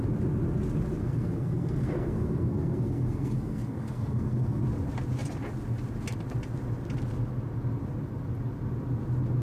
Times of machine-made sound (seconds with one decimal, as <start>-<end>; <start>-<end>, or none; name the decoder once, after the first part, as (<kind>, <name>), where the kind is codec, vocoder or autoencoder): 1.0-4.6 (codec, SNAC)